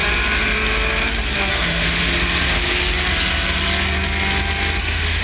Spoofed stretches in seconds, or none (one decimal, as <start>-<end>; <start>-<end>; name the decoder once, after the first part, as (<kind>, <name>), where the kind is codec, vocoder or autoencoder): 1.5-2.1 (autoencoder, DAC-VAE); 4.8-5.2